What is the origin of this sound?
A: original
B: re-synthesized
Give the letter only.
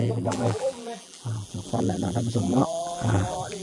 B